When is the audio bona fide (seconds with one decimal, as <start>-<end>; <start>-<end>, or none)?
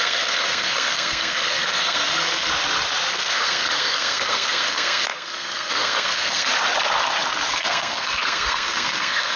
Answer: 2.5-3.1; 6.5-7.5